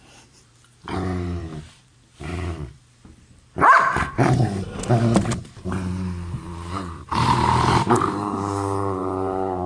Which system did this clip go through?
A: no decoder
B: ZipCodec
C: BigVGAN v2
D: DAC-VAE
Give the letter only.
C